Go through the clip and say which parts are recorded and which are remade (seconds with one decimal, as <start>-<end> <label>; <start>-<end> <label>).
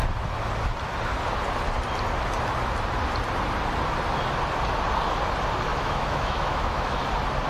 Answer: 0.0-5.7 recorded; 5.7-7.0 remade; 7.0-7.5 recorded